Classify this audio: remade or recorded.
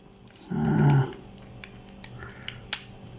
recorded